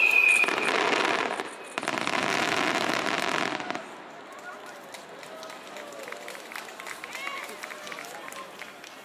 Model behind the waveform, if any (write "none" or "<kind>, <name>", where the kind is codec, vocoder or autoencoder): none